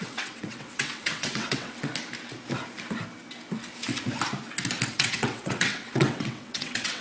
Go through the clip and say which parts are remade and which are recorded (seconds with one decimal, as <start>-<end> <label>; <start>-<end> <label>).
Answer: 0.0-1.9 remade; 1.9-4.9 recorded; 4.9-7.0 remade

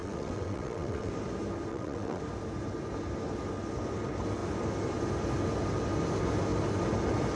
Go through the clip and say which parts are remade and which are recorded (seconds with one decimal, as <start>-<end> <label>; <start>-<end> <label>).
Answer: 0.0-1.1 remade; 1.1-1.7 recorded; 1.7-2.2 remade; 2.2-7.4 recorded